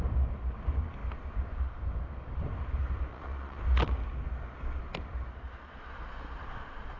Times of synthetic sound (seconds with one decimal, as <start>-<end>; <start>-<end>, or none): 3.1-3.6